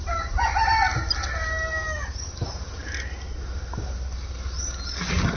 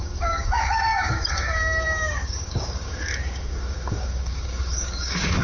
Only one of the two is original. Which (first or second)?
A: first